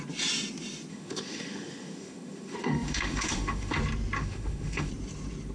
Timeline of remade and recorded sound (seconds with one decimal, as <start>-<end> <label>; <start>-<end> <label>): 0.0-0.9 recorded; 0.9-3.8 remade; 3.8-4.2 recorded; 4.2-4.9 remade; 4.9-5.5 recorded